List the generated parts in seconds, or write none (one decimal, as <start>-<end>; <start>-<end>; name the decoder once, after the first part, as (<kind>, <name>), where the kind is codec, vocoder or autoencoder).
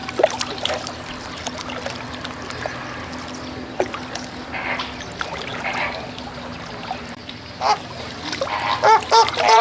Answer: 1.3-5.5 (vocoder, BigVGAN v2); 6.8-9.6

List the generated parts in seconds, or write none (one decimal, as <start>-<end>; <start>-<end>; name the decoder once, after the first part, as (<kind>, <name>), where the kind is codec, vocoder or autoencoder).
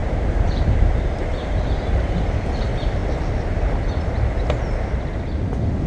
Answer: 0.0-1.0 (vocoder, BigVGAN v2); 1.4-2.2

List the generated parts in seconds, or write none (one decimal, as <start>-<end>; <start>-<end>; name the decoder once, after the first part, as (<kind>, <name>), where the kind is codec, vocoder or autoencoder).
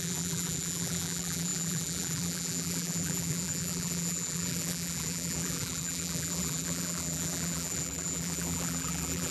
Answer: 0.0-9.3 (vocoder, BigVGAN v2)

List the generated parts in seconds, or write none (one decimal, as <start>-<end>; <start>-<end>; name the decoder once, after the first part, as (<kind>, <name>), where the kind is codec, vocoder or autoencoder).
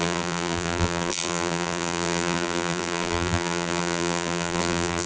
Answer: 0.0-5.1 (vocoder, BigVGAN v2)